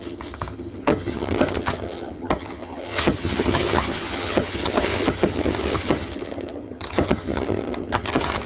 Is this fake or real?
fake